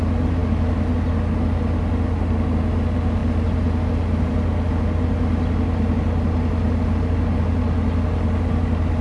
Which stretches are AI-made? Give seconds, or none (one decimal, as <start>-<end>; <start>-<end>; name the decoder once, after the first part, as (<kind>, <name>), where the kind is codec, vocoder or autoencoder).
none